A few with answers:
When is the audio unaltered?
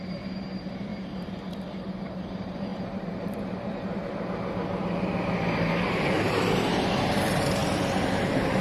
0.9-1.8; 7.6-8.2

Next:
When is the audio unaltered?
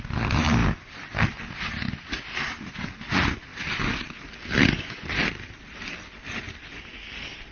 0.0-7.5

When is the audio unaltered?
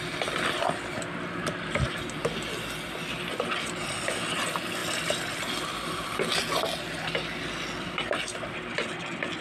0.0-4.8; 6.3-9.4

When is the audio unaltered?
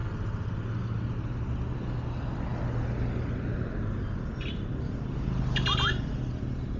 0.0-6.8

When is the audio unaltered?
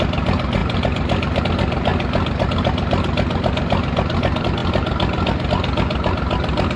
0.0-0.6; 1.4-6.8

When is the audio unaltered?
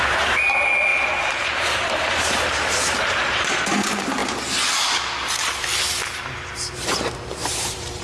4.2-7.0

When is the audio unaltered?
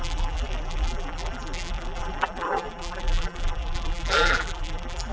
none